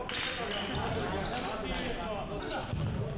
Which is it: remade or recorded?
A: recorded